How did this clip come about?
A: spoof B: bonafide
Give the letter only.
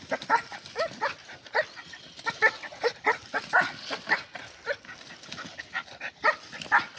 B